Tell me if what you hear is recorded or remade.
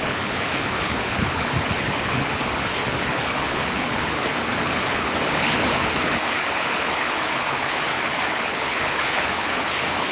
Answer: remade